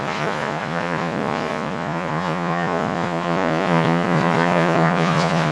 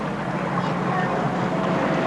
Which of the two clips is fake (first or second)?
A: first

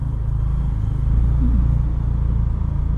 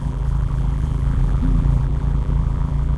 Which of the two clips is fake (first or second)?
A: second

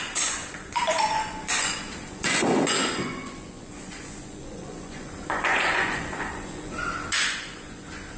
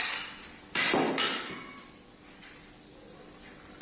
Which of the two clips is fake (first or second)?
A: first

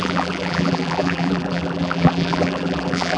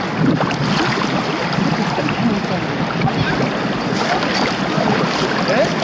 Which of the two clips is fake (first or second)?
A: first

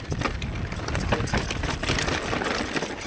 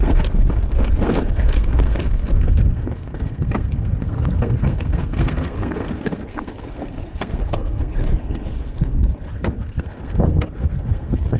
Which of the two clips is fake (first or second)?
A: second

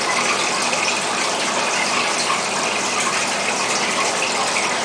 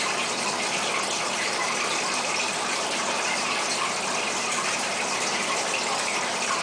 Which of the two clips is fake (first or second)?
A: second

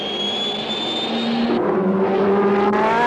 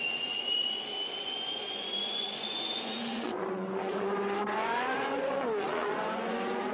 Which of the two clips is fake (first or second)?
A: second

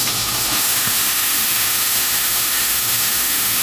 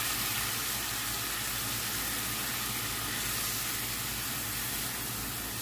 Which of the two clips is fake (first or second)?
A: first